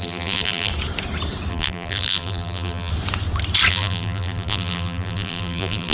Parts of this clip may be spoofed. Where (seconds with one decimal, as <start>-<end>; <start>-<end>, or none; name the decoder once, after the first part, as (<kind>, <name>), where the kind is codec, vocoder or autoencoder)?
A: 0.0-0.7 (vocoder, BigVGAN v2); 1.5-2.9; 3.7-5.9